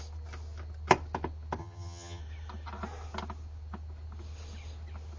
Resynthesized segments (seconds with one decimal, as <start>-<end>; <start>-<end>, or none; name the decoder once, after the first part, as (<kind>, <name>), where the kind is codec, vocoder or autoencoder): 1.6-2.2 (vocoder, HiFi-GAN)